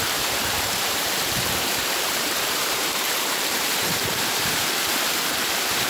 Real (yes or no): no